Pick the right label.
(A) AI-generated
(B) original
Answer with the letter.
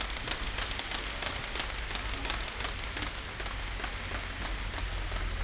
B